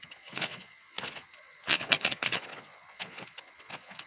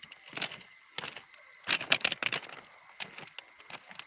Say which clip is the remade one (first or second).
first